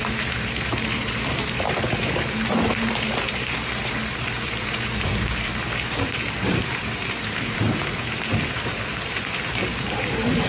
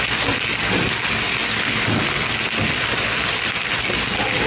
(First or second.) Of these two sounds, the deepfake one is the first